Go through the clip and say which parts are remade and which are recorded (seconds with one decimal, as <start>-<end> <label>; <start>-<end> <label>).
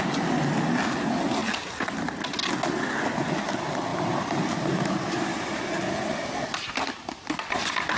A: 0.0-3.9 recorded; 3.9-5.7 remade; 5.7-8.0 recorded